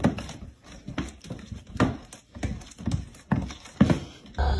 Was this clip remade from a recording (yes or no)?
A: no